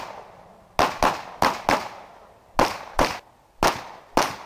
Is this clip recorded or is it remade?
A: recorded